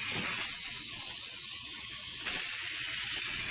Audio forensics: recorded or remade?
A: remade